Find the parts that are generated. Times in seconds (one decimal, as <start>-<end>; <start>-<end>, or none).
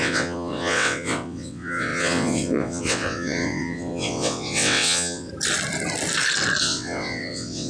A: 0.0-5.3; 6.6-7.7